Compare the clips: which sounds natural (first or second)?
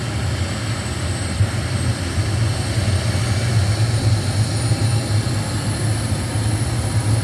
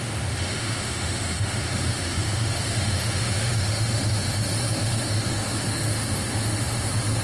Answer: first